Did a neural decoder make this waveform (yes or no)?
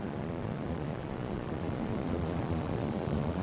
yes